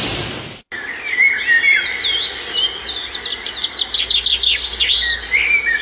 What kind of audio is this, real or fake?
real